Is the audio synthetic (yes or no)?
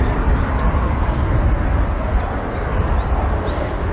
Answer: no